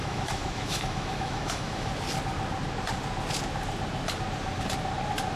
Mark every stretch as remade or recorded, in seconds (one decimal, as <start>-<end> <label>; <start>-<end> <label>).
0.0-1.9 remade; 1.9-5.4 recorded

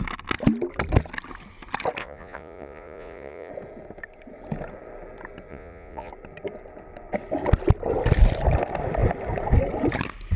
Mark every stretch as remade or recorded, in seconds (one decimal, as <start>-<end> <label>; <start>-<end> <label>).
0.0-2.0 recorded; 2.0-3.5 remade; 3.5-5.5 recorded; 5.5-6.1 remade; 6.1-10.4 recorded